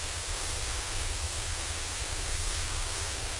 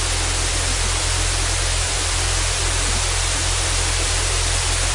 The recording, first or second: second